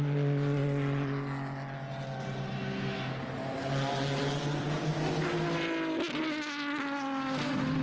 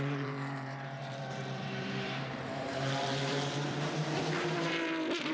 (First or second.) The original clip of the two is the first